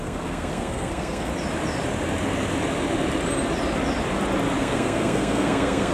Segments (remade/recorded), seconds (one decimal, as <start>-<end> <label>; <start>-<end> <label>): 0.0-1.3 remade; 1.3-4.6 recorded; 4.6-5.9 remade